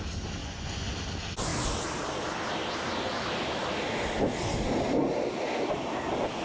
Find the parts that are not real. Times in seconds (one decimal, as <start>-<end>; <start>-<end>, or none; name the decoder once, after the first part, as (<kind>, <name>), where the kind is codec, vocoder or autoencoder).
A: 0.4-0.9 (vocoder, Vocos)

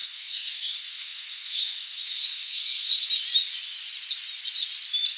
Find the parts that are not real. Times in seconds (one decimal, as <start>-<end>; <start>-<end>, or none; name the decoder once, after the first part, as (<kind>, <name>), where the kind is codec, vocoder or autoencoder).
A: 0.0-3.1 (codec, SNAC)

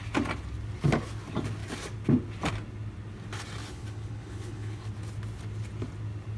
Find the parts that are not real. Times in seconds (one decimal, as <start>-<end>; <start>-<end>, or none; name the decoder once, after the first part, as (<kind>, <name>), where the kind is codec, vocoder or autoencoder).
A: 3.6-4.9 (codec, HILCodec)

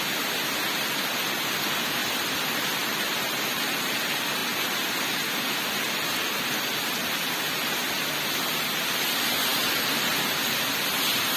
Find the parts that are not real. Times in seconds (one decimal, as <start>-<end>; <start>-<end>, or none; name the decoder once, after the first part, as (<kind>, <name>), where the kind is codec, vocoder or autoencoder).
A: 2.0-3.0 (vocoder, BigVGAN v2); 9.5-10.5